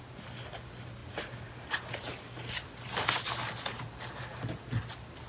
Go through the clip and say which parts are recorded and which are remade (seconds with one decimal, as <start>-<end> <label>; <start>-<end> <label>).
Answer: 0.0-5.3 recorded